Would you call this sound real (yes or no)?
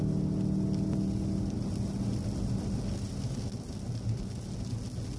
yes